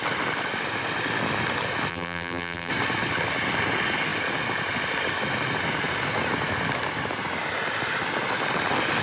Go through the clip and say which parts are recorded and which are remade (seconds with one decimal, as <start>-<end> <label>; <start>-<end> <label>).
0.0-1.9 recorded; 1.9-2.7 remade; 2.7-9.0 recorded